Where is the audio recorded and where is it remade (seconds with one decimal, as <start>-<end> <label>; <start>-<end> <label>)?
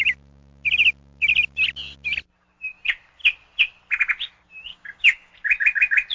0.0-4.7 recorded; 4.7-5.3 remade; 5.3-6.1 recorded